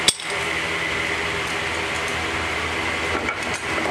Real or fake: real